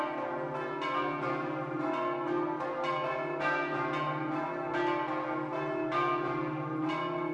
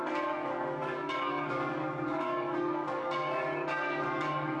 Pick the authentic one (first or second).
first